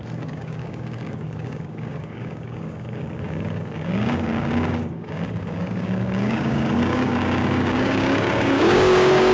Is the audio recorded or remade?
remade